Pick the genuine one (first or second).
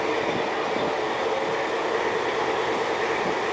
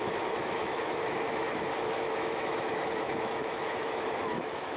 first